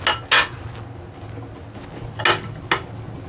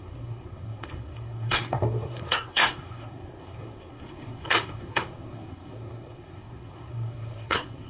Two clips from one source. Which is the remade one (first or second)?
second